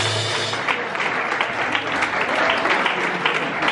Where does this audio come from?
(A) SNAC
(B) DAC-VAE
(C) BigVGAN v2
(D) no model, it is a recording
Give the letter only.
D